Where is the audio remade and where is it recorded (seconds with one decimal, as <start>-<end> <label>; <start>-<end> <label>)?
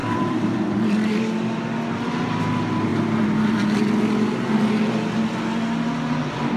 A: 0.0-1.3 remade; 1.3-6.6 recorded